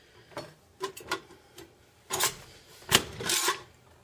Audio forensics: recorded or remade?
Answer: remade